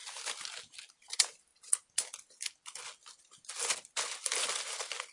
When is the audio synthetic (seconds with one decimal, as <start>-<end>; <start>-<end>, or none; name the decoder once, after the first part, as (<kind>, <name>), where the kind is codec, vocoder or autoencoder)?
none